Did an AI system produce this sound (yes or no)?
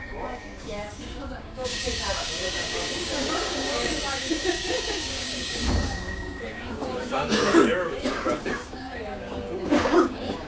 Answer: yes